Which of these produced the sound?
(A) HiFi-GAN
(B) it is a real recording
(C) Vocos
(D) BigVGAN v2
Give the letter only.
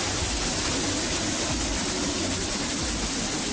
B